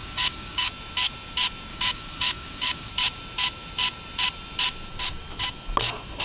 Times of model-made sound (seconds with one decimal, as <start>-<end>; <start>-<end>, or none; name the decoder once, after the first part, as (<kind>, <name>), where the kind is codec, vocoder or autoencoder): 0.0-0.7 (codec, DAC); 1.7-2.9